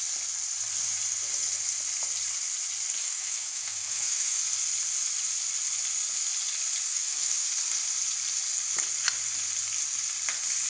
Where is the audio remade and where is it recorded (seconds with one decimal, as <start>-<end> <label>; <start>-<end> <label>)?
0.0-3.0 recorded; 3.0-4.4 remade; 4.4-6.9 recorded; 6.9-7.5 remade; 7.5-10.7 recorded